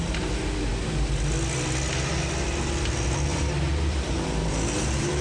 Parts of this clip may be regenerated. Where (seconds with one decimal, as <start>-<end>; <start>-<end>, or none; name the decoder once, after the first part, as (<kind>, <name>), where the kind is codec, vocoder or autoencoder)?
3.3-5.2 (vocoder, BigVGAN v2)